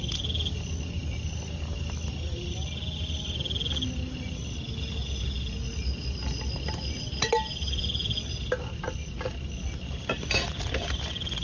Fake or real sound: real